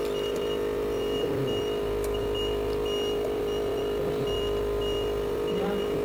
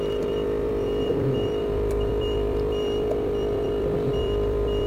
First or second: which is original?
first